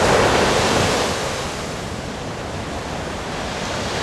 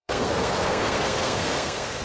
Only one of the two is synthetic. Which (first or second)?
second